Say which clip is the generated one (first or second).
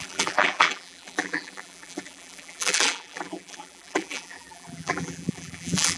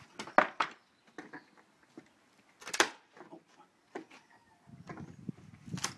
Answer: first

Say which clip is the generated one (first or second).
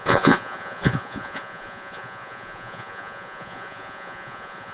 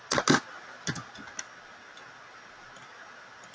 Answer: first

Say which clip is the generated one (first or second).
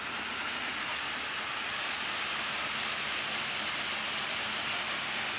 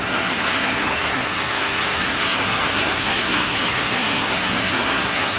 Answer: second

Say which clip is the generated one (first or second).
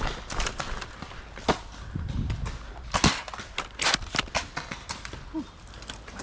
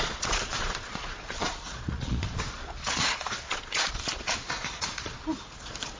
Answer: second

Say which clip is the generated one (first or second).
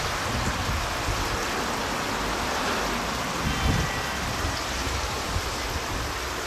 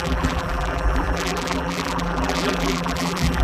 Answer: second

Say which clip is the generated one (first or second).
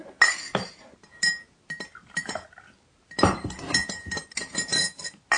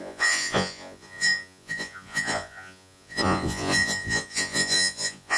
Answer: second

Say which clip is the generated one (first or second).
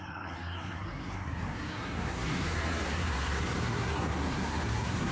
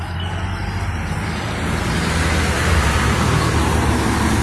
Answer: first